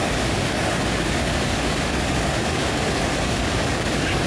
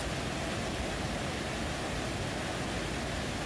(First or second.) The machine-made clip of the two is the first